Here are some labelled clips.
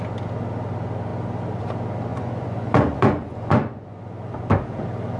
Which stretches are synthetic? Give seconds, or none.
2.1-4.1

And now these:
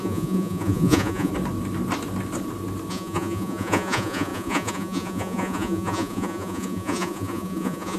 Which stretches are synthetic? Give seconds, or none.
0.0-1.3; 2.9-8.0

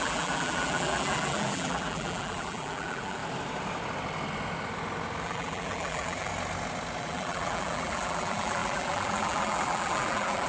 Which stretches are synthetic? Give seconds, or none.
0.0-3.2; 5.2-6.3; 7.0-10.5

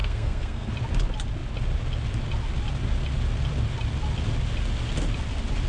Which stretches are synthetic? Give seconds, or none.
0.0-0.7

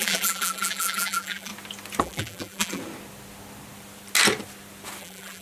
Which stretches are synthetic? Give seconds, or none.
0.0-1.5; 2.0-2.8; 5.0-5.4

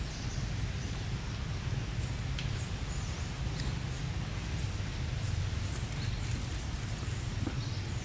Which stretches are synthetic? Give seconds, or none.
4.4-5.4

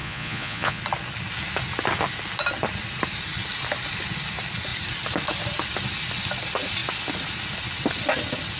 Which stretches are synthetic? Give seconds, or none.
0.0-0.8